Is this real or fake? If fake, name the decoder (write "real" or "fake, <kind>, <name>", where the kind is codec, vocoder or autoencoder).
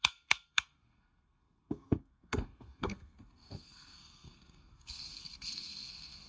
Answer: fake, codec, SNAC